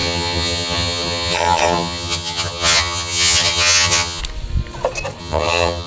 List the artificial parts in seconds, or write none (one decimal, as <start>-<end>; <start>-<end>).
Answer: 0.0-4.2; 5.2-5.9